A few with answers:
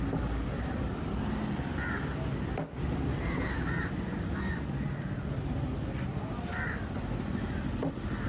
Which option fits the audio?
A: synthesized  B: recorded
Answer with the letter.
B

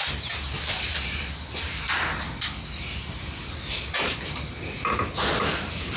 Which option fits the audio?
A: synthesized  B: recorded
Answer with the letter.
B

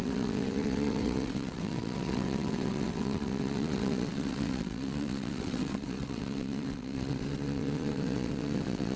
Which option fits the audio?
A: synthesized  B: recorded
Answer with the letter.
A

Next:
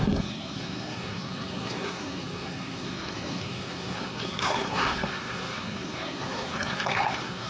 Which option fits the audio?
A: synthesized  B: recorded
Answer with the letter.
A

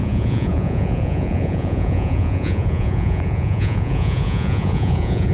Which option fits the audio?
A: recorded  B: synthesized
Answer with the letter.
B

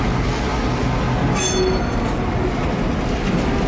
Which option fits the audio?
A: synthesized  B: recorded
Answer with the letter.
B